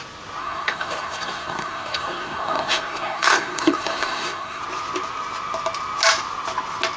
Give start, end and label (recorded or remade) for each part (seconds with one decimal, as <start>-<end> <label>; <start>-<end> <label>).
0.0-0.4 recorded; 0.4-4.6 remade; 4.6-7.0 recorded

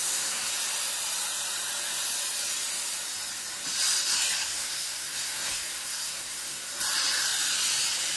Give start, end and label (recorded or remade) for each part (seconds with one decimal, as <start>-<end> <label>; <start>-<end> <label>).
0.0-0.5 remade; 0.5-4.4 recorded; 4.4-6.7 remade; 6.7-8.2 recorded

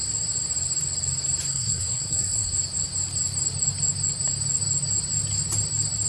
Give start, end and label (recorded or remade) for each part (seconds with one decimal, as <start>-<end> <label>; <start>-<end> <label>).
0.0-1.5 recorded; 1.5-2.5 remade; 2.5-6.1 recorded

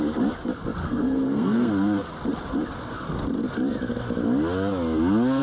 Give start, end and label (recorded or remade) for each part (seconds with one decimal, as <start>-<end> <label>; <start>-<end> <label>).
0.0-0.8 recorded; 0.8-1.7 remade; 1.7-5.4 recorded

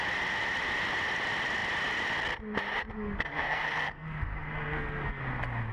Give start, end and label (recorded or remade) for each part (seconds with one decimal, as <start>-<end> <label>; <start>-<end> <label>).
0.0-2.9 recorded; 2.9-5.2 remade; 5.2-5.7 recorded

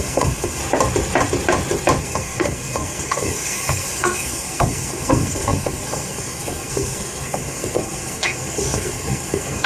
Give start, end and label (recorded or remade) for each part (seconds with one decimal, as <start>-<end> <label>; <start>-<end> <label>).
0.0-0.6 remade; 0.6-2.0 recorded; 2.0-9.7 remade